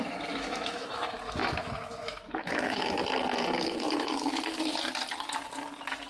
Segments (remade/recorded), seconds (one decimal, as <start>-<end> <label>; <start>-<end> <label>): 0.0-3.0 remade; 3.0-3.6 recorded; 3.6-4.3 remade; 4.3-6.1 recorded